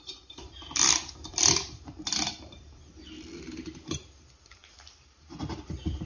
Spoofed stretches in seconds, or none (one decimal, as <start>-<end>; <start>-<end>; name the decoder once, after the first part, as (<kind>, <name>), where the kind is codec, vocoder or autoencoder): none